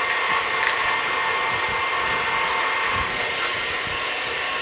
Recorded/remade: recorded